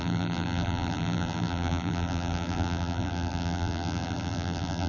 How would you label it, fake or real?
fake